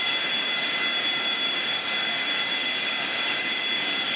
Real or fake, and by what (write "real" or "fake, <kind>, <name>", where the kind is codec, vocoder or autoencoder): fake, codec, DAC